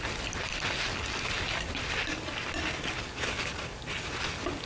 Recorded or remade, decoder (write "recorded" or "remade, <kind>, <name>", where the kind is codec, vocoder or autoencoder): recorded